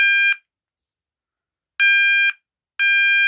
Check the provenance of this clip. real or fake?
real